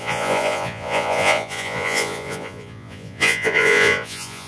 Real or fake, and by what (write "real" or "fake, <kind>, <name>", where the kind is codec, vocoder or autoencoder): fake, vocoder, Vocos